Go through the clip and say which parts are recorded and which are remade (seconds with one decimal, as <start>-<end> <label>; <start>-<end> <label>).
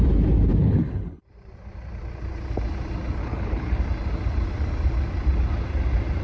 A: 0.0-0.6 recorded; 0.6-1.2 remade; 1.2-3.2 recorded; 3.2-3.8 remade; 3.8-6.2 recorded